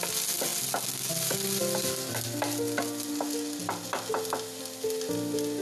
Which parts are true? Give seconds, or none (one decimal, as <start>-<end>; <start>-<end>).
0.0-5.6